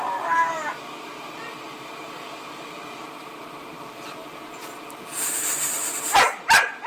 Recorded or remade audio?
remade